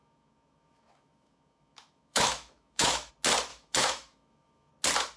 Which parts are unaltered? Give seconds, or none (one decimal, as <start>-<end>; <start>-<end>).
3.1-3.5; 4.7-5.2